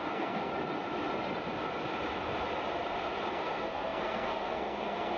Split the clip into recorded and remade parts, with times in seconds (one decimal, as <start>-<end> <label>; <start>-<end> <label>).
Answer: 0.0-0.5 remade; 0.5-3.3 recorded; 3.3-5.2 remade